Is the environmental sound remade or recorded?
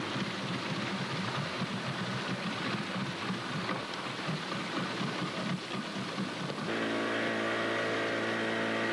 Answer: recorded